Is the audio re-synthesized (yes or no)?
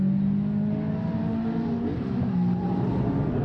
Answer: no